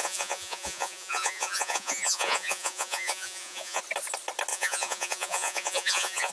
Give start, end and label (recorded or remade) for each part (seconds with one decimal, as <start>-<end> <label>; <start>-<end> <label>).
0.0-3.8 remade; 3.8-4.5 recorded; 4.5-6.3 remade